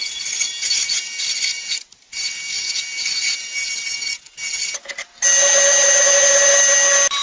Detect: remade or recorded recorded